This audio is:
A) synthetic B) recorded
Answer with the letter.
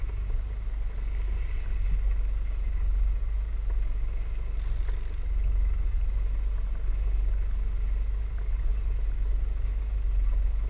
B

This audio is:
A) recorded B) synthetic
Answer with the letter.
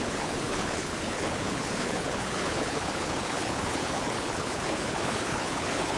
B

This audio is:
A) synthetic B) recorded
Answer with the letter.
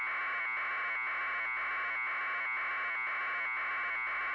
B